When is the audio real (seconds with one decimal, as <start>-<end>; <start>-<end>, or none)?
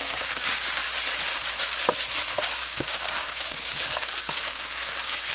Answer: 0.8-2.6